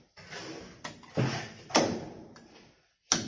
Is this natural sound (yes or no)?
yes